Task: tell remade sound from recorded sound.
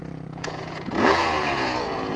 remade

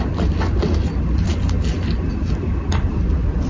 remade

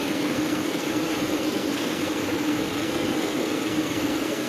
remade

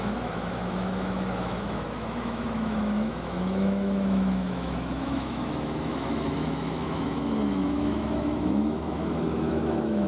remade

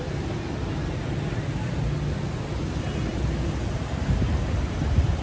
recorded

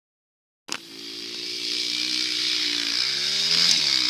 recorded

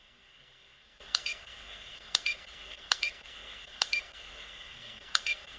remade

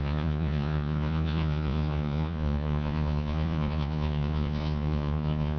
remade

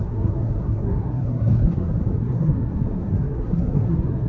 remade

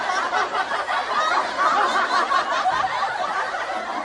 recorded